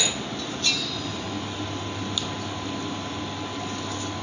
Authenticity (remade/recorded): recorded